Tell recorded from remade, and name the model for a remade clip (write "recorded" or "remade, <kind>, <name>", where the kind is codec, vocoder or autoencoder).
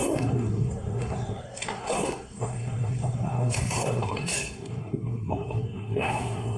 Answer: remade, codec, SNAC